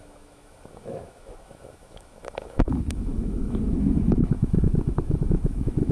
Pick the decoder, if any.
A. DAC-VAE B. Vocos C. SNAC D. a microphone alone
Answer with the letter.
A